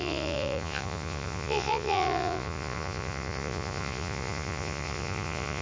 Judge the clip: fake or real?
fake